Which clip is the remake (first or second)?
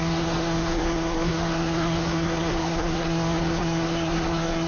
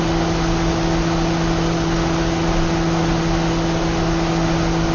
first